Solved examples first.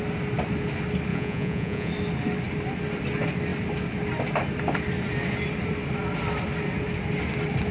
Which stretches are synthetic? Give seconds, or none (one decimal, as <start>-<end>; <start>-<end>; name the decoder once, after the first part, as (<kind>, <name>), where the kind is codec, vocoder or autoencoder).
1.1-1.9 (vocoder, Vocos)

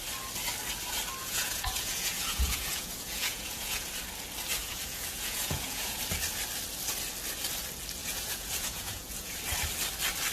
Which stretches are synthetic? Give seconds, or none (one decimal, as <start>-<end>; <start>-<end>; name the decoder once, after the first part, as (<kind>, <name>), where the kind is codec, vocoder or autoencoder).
1.2-3.9 (vocoder, Vocos); 4.6-6.0; 8.0-9.4

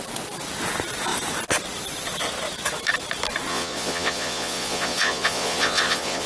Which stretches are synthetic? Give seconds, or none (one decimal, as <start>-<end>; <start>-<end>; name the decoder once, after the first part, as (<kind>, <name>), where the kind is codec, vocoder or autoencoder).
3.5-6.3 (vocoder, Vocos)

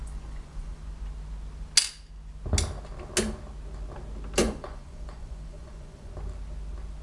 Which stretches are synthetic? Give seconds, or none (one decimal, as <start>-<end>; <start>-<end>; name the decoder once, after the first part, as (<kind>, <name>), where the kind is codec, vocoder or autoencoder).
0.0-0.8 (vocoder, Vocos); 4.4-6.1

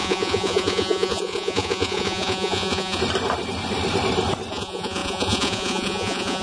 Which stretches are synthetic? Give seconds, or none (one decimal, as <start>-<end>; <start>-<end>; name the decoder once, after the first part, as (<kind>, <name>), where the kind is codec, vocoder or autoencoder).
0.0-3.0 (vocoder, Vocos); 4.5-6.4

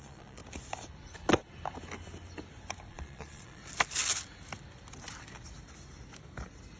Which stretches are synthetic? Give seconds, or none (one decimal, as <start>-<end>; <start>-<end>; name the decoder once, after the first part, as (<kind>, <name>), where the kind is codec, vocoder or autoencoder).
0.0-0.4 (vocoder, Vocos); 2.9-3.6

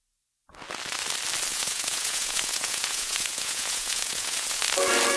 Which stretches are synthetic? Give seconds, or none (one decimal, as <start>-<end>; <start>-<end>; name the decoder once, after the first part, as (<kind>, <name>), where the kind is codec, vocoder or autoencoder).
1.5-4.6 (vocoder, Vocos)